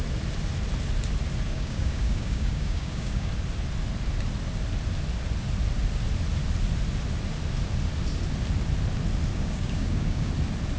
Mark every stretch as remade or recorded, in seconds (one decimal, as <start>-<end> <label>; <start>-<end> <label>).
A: 0.0-1.5 recorded; 1.5-3.3 remade; 3.3-9.3 recorded; 9.3-10.3 remade; 10.3-10.8 recorded